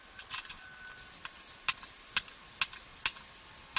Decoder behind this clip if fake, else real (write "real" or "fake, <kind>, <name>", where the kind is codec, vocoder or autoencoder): real